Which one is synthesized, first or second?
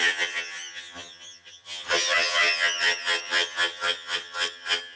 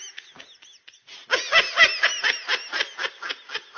first